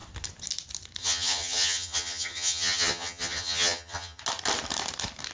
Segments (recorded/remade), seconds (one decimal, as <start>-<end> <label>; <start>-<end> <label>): 0.0-1.0 recorded; 1.0-4.2 remade; 4.2-5.3 recorded